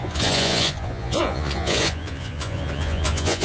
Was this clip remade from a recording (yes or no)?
yes